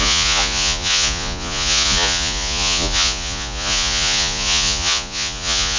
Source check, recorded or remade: remade